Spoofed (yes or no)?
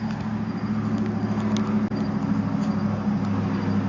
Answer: no